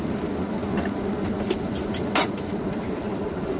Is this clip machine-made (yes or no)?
no